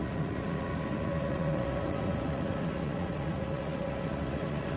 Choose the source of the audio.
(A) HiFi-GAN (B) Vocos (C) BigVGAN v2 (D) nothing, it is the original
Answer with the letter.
B